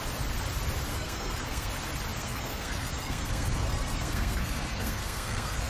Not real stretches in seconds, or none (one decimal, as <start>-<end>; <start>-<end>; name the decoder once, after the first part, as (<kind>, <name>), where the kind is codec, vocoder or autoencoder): 0.9-1.7 (codec, SNAC); 2.2-5.7